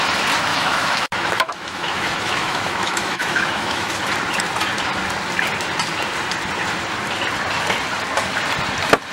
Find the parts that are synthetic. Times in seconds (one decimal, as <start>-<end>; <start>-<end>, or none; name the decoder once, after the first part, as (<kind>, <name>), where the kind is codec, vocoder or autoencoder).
0.5-4.0 (autoencoder, DAC-VAE)